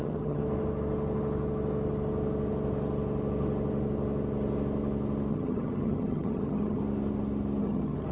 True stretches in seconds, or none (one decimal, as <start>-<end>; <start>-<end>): 0.4-5.3; 6.8-7.6